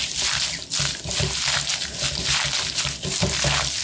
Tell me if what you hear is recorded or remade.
recorded